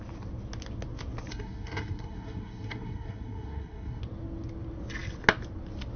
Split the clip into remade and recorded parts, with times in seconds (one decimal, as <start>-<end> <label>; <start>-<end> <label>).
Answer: 0.0-1.3 recorded; 1.3-4.0 remade; 4.0-6.0 recorded